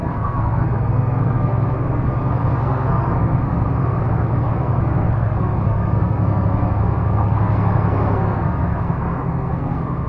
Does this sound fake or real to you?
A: fake